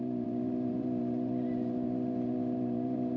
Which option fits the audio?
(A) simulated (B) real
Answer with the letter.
A